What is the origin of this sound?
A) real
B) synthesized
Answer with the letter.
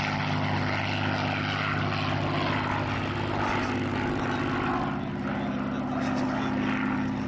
A